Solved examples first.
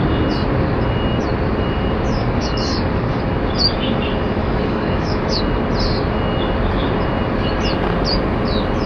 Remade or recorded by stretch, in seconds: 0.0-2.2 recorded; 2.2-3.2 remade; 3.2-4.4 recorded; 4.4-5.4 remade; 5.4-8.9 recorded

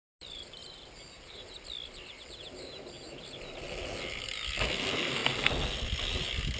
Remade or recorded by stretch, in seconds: 0.0-6.6 recorded

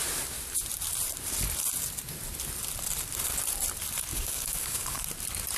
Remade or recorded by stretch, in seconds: 0.0-4.1 recorded; 4.1-5.0 remade; 5.0-5.6 recorded